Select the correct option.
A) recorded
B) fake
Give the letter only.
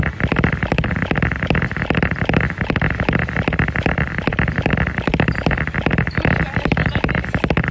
A